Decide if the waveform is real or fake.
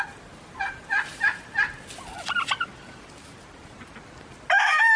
real